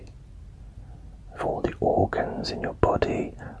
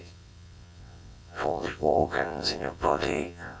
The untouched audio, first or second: first